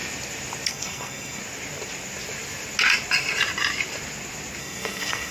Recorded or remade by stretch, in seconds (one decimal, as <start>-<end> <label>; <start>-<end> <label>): 0.0-0.7 recorded; 0.7-1.4 remade; 1.4-4.6 recorded; 4.6-5.3 remade